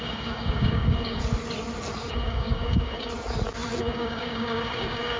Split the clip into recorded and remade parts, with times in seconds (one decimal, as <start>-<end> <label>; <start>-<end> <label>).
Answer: 0.0-1.2 remade; 1.2-2.1 recorded; 2.1-3.1 remade; 3.1-3.8 recorded; 3.8-5.2 remade

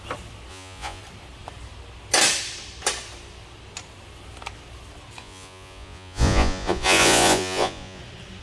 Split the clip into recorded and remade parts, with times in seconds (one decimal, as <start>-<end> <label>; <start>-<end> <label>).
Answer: 0.0-0.5 recorded; 0.5-1.0 remade; 1.0-5.2 recorded; 5.2-8.0 remade; 8.0-8.4 recorded